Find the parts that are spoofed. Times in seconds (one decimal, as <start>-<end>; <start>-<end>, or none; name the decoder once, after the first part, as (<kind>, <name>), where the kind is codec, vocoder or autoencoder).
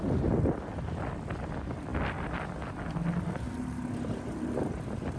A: none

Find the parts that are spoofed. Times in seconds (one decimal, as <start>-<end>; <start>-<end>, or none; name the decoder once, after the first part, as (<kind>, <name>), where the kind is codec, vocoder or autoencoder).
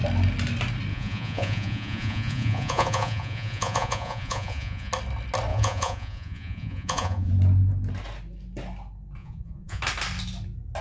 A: 0.9-4.9 (vocoder, Vocos); 5.5-7.3; 9.2-9.8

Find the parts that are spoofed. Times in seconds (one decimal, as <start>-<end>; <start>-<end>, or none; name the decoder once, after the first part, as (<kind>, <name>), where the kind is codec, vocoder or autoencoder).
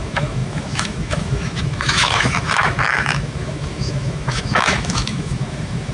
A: 0.0-5.9 (autoencoder, DAC-VAE)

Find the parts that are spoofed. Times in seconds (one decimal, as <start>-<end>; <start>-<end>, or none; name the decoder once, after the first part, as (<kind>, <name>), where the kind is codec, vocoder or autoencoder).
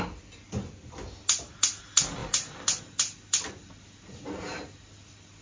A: none